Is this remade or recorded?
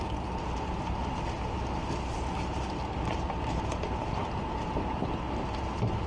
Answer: recorded